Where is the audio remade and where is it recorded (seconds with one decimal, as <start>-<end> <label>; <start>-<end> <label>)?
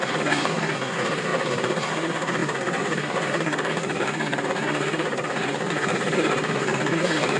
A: 0.0-7.4 remade